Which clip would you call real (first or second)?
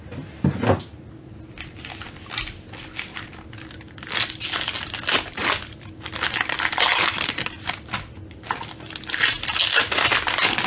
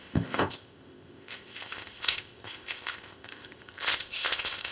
first